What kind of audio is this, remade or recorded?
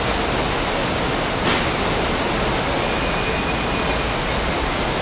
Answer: recorded